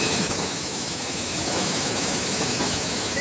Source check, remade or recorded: remade